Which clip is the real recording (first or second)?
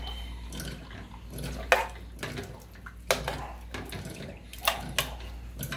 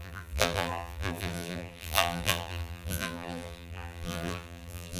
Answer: first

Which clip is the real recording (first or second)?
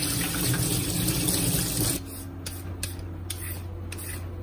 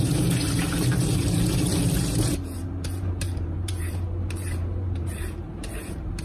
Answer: first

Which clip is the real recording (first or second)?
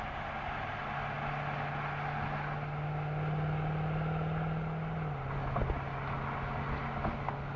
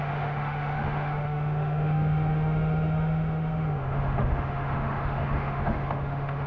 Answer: first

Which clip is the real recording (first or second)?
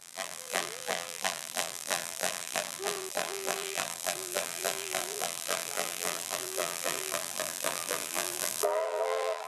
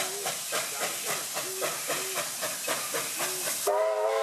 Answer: second